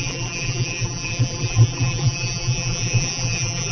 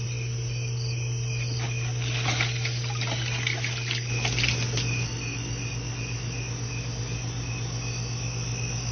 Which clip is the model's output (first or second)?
first